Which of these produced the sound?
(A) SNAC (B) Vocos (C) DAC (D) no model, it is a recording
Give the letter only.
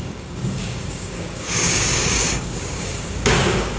C